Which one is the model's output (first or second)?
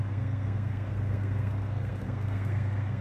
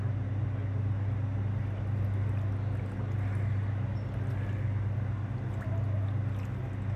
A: first